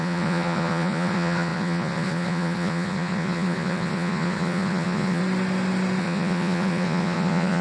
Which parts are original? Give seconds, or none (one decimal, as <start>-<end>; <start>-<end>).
5.2-6.0